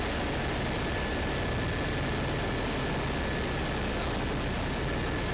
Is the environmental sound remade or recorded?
recorded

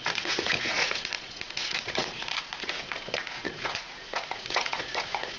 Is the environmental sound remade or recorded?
remade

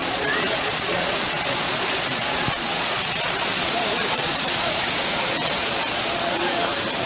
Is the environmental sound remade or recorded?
remade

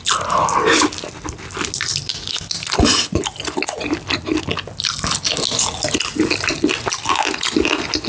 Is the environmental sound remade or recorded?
recorded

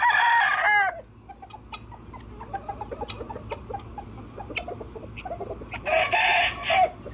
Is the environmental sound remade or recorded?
recorded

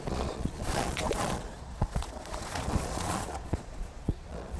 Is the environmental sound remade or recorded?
remade